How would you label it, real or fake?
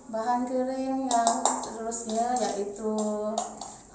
real